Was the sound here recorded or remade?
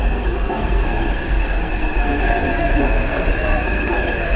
remade